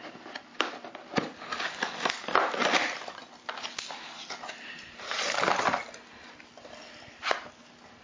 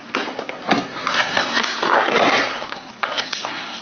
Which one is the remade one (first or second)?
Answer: second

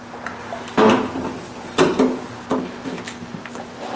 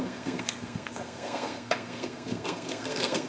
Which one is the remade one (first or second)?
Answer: second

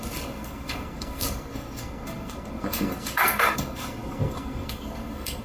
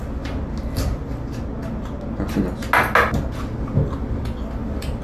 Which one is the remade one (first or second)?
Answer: first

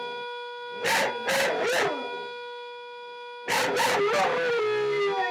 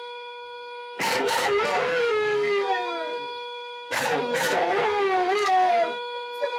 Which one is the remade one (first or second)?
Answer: second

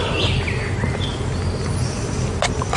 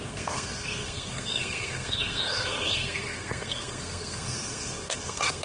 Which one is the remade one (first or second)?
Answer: second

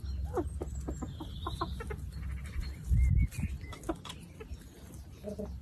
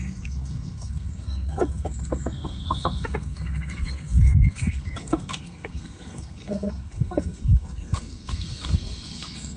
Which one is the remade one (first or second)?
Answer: second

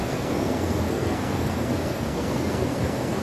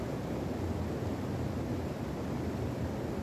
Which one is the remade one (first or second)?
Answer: first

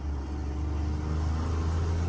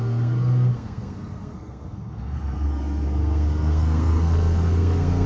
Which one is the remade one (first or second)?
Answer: second